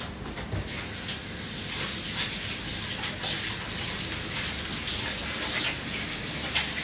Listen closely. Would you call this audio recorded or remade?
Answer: recorded